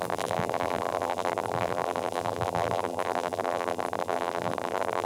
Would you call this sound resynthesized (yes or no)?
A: yes